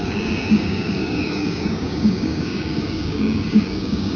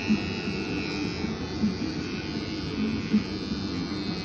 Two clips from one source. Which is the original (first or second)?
second